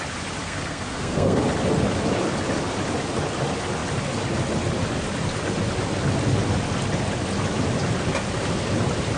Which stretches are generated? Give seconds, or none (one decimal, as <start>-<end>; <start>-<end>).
0.4-1.4